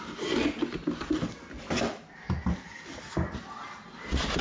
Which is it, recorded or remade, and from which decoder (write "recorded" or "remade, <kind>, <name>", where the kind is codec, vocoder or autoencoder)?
recorded